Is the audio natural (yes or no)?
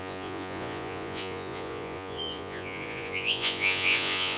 no